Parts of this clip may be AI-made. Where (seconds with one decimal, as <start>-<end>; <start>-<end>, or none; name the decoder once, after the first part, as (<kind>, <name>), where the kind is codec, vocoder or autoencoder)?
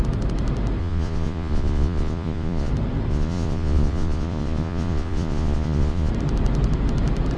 0.8-2.7 (vocoder, Vocos); 3.1-6.1